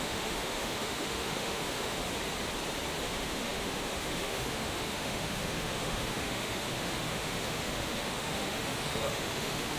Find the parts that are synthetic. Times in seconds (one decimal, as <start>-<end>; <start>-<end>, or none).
0.0-2.0; 3.0-9.8